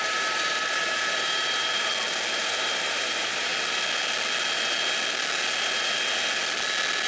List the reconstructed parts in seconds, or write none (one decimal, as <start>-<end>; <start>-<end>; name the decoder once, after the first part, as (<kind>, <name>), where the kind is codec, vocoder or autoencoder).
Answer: 0.0-1.9 (vocoder, BigVGAN v2); 2.4-3.5